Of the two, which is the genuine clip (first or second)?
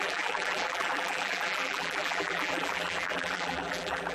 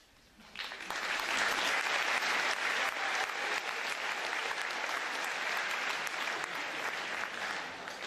second